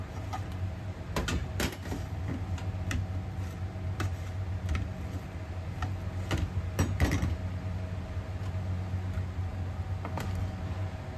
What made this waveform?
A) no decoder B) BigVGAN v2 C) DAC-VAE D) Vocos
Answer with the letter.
A